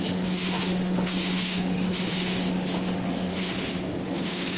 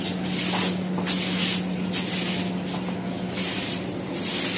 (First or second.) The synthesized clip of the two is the first